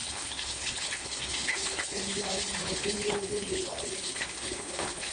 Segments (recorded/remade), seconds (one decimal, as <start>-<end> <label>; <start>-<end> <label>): 0.0-5.1 remade